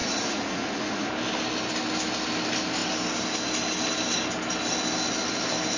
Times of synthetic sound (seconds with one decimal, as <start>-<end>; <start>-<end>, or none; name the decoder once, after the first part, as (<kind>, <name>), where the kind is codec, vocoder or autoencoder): 0.0-1.1 (vocoder, Vocos)